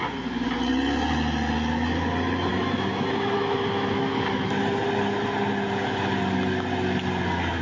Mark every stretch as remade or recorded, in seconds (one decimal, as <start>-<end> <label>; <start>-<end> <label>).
0.0-2.5 recorded; 2.5-4.6 remade; 4.6-7.6 recorded